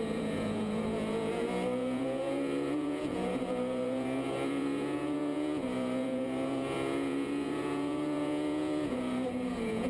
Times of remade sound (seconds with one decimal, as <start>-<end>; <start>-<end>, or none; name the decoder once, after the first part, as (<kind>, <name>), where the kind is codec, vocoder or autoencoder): 0.0-9.9 (vocoder, Vocos)